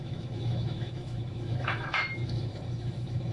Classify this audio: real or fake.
fake